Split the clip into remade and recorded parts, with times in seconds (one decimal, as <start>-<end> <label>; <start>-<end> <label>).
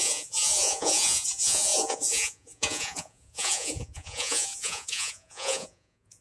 0.0-6.2 remade